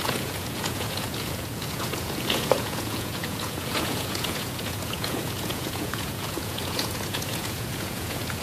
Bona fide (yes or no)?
no